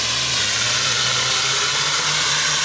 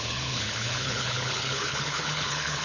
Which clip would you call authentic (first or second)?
first